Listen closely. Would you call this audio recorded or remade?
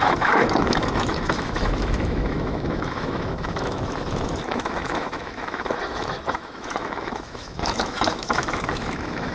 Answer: remade